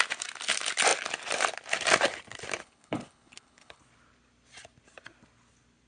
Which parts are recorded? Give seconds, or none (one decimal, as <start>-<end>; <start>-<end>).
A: 0.0-2.6; 3.8-5.9